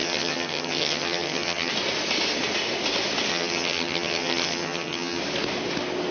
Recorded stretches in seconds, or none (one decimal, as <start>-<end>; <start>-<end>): 1.7-3.3; 5.2-6.1